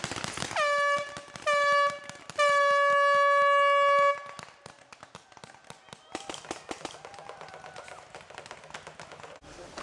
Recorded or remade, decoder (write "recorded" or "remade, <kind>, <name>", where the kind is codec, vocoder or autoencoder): recorded